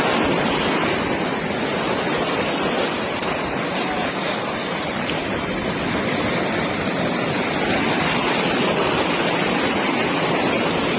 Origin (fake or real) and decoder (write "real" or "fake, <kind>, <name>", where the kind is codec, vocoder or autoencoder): real